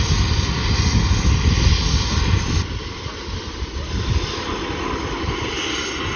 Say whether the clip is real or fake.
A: real